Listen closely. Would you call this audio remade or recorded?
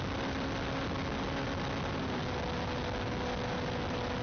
recorded